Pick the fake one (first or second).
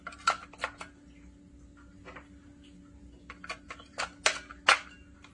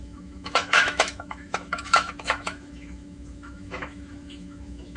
second